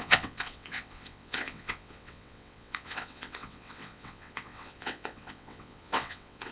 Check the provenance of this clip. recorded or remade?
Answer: remade